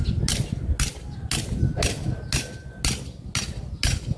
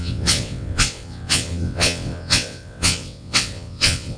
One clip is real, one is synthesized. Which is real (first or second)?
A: first